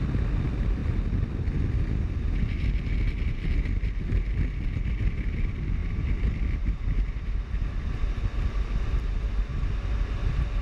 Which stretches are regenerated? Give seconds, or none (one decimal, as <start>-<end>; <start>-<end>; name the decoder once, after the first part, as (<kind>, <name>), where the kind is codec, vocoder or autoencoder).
5.8-6.7 (vocoder, BigVGAN v2)